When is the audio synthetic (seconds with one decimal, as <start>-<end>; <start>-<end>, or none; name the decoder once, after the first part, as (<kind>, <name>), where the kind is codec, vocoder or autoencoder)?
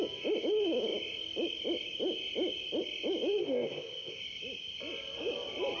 3.4-4.2 (codec, ZipCodec)